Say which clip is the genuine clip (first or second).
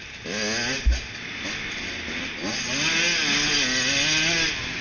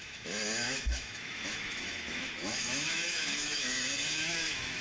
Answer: first